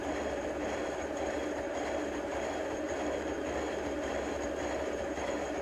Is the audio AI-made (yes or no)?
yes